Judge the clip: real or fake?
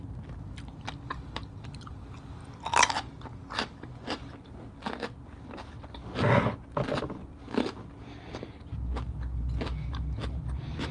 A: real